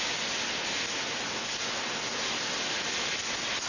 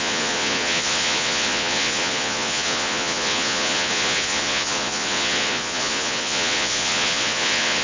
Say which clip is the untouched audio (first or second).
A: first